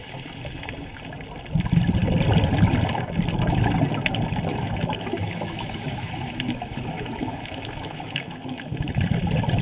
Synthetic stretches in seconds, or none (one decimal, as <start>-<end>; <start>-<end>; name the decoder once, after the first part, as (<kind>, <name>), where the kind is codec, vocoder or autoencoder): 4.5-8.9 (autoencoder, DAC-VAE)